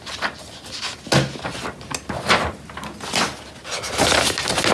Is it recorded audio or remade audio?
recorded